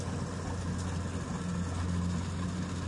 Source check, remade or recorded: recorded